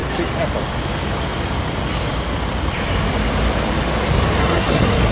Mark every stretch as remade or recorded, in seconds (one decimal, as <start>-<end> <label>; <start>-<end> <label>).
0.0-4.4 recorded; 4.4-5.1 remade